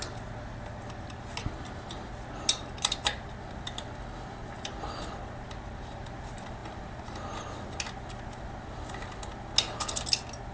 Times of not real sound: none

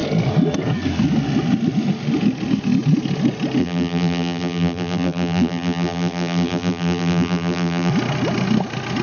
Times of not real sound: 3.6-7.9

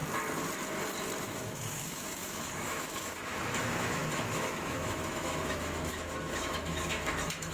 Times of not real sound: 1.2-7.5

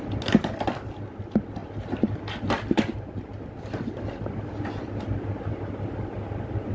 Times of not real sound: none

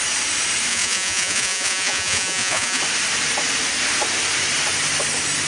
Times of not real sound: 0.7-2.8

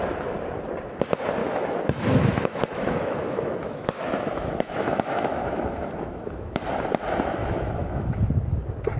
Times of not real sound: 1.4-6.6; 7.4-8.2

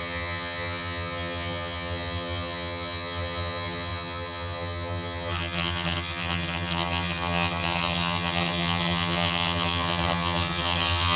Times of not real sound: 0.0-11.2